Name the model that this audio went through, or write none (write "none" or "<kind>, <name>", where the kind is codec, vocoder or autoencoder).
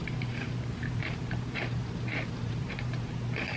vocoder, BigVGAN v2